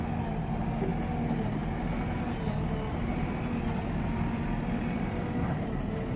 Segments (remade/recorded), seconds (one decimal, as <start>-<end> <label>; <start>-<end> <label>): 0.0-6.2 recorded